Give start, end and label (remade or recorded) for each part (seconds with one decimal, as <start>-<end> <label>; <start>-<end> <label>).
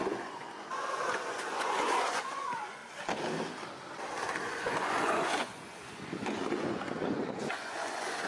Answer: 0.0-2.8 remade; 2.8-4.4 recorded; 4.4-8.3 remade